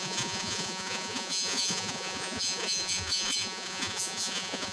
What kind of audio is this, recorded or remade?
remade